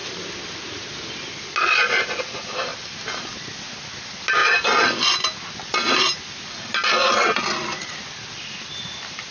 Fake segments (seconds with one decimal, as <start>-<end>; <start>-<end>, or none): none